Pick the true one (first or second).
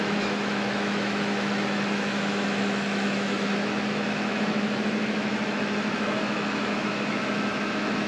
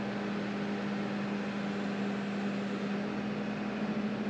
second